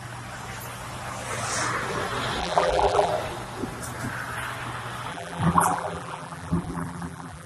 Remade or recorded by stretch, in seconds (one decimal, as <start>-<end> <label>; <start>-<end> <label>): 0.0-2.4 recorded; 2.4-3.1 remade; 3.1-5.1 recorded; 5.1-7.5 remade

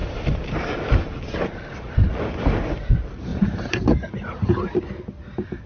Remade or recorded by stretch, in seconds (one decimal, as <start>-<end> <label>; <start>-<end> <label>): 0.0-1.2 remade; 1.2-3.3 recorded; 3.3-4.5 remade; 4.5-5.7 recorded

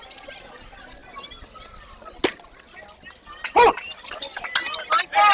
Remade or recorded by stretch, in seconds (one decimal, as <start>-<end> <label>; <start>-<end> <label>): 0.0-5.3 recorded